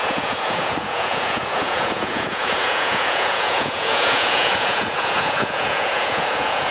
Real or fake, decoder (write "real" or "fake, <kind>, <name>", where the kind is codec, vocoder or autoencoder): fake, vocoder, Vocos